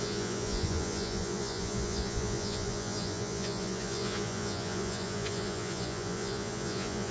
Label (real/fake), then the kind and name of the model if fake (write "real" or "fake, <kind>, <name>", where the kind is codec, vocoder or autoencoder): fake, vocoder, Vocos